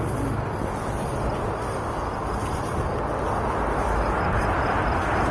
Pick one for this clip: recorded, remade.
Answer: recorded